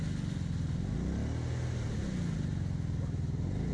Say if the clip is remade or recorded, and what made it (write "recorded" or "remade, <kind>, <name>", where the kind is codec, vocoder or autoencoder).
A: recorded